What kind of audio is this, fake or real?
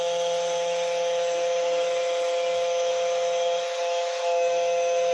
fake